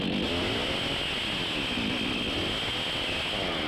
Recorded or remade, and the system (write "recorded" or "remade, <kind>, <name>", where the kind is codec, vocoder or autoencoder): recorded